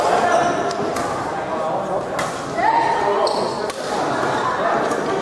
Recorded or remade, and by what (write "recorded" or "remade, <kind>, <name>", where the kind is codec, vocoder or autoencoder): recorded